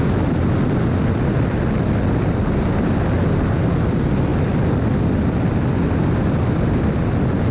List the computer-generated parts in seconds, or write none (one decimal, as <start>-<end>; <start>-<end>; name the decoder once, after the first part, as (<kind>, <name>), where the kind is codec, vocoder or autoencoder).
none